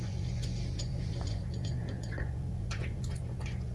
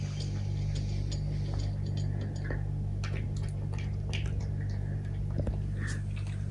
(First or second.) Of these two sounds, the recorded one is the second